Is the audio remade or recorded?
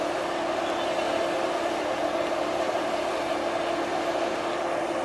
recorded